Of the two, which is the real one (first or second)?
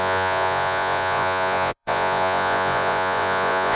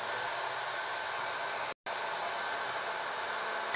second